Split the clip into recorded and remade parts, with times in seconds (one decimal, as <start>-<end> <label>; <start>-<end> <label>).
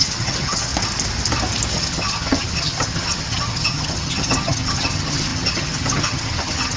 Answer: 0.0-0.7 remade; 0.7-1.7 recorded; 1.7-6.8 remade